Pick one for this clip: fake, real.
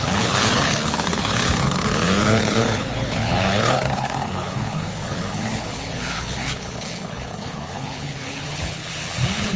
fake